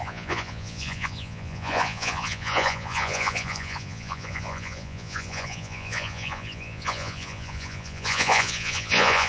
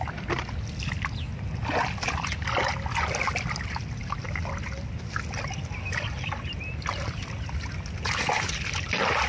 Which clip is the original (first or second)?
second